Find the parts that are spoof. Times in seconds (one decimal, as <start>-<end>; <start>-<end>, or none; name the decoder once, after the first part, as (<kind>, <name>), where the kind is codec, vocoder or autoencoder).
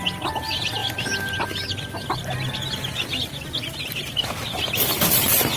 none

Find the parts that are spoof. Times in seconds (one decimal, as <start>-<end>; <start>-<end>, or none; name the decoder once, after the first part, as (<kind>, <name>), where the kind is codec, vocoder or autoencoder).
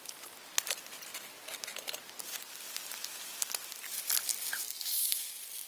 4.6-5.1 (codec, DAC)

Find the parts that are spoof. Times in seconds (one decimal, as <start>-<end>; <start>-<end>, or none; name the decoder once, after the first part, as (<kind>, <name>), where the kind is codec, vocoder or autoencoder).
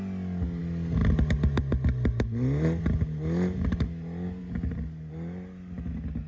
none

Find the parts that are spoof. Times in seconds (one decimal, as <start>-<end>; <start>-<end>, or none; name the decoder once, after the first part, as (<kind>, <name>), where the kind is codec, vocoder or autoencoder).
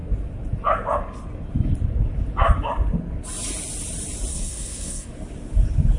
4.3-5.1 (codec, SNAC)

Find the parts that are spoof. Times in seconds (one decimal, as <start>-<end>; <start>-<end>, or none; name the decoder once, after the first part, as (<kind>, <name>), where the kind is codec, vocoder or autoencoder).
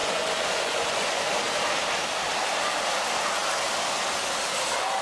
0.0-1.2 (vocoder, Vocos)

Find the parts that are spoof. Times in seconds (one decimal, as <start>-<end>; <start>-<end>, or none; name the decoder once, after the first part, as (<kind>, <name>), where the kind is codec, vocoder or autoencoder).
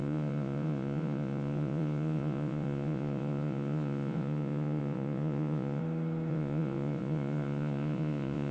0.0-5.8 (vocoder, Vocos); 6.3-8.5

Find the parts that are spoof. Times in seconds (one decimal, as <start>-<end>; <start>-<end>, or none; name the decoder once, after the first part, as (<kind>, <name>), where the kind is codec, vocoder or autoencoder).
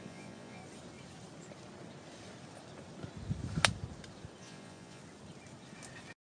0.0-0.6 (vocoder, Vocos); 4.4-5.0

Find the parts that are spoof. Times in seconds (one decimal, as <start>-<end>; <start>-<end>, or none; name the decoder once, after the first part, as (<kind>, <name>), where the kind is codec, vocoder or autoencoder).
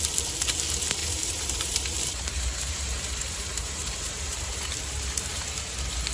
1.0-4.7 (vocoder, BigVGAN v2)